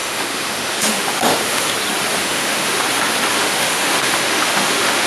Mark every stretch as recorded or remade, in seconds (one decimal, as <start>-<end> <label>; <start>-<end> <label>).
0.0-1.7 remade; 1.7-2.2 recorded; 2.2-2.8 remade; 2.8-3.3 recorded; 3.3-5.1 remade